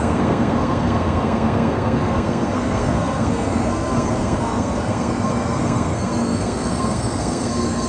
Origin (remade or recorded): remade